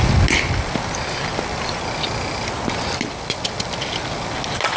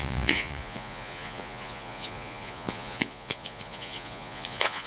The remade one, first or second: second